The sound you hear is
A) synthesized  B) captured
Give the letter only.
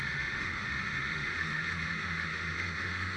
A